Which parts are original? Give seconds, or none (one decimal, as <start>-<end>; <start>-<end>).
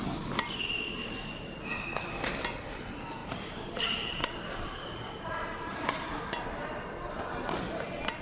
0.0-3.2; 6.2-8.2